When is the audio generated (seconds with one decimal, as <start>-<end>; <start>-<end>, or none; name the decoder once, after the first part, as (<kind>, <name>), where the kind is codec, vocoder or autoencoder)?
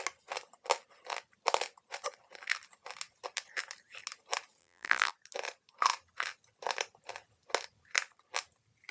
4.6-5.1 (vocoder, BigVGAN v2)